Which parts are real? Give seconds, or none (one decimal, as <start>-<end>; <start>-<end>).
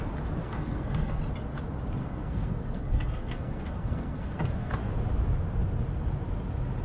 0.0-0.4; 1.2-2.0; 4.9-6.8